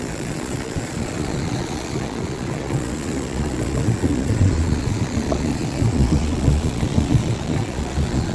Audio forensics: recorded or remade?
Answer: remade